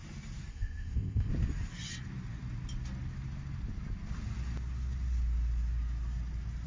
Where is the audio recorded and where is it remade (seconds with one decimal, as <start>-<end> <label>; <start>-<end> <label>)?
0.0-0.5 recorded; 0.5-1.3 remade; 1.3-6.7 recorded